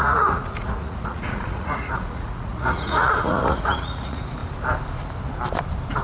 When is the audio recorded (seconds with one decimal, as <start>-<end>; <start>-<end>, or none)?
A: 4.4-6.0